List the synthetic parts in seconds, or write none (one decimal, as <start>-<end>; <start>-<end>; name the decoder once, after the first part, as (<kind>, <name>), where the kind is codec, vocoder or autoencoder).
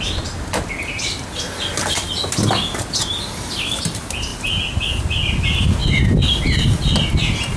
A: none